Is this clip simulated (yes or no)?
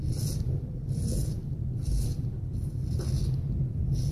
no